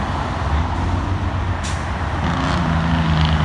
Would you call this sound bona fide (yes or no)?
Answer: yes